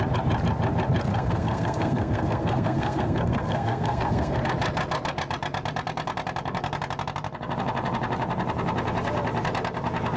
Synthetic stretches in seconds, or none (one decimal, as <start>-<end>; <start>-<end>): 1.1-4.4

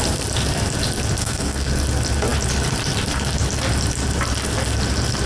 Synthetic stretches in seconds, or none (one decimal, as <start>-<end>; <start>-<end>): 1.2-1.7